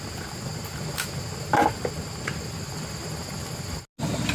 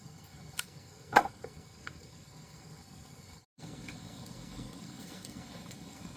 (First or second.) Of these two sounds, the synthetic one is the second